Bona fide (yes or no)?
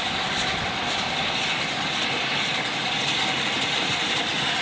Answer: yes